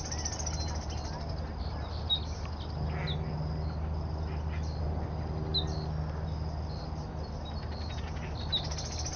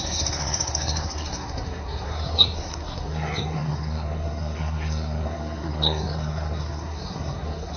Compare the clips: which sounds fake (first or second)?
second